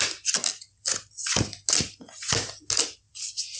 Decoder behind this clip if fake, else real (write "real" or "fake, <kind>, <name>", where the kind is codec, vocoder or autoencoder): real